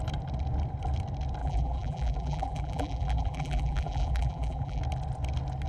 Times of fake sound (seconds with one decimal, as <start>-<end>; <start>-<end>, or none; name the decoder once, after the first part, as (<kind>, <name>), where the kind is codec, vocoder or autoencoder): 1.4-4.8 (vocoder, BigVGAN v2)